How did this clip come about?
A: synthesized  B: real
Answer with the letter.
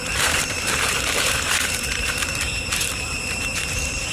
A